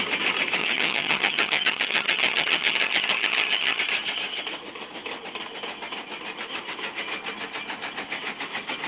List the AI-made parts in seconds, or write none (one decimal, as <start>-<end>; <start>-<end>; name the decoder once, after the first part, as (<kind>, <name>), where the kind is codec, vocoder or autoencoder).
0.6-3.8 (vocoder, HiFi-GAN)